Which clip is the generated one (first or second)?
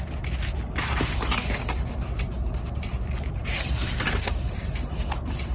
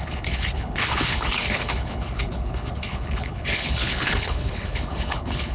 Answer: second